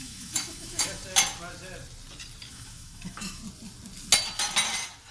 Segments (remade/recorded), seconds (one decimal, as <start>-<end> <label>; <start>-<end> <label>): 0.0-1.0 remade; 1.0-2.5 recorded; 2.5-3.4 remade; 3.4-5.1 recorded